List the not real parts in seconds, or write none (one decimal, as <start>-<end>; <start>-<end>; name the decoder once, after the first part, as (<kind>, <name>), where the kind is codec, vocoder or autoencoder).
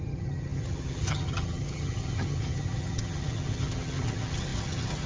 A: 0.0-5.1 (vocoder, HiFi-GAN)